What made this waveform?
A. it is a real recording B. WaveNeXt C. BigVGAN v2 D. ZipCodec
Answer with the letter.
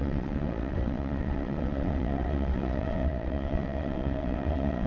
B